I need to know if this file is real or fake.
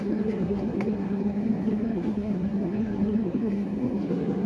fake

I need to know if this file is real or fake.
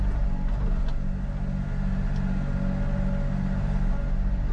real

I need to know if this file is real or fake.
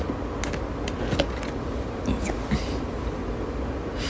real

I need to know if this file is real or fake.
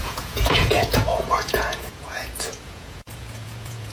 fake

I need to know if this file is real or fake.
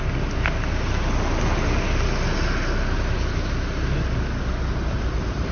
real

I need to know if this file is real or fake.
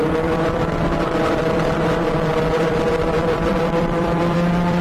fake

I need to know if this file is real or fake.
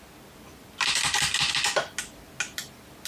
real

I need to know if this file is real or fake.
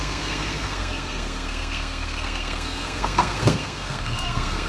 fake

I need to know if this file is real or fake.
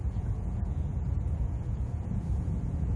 fake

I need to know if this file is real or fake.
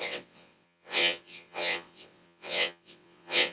fake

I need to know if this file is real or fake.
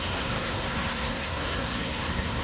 fake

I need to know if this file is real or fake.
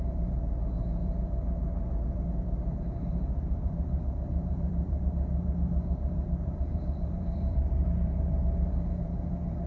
fake